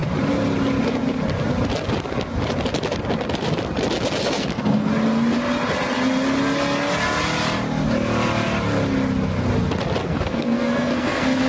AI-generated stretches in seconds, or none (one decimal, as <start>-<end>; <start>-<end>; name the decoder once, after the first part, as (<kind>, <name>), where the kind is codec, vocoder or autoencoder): 4.2-4.9 (codec, SNAC); 10.0-11.5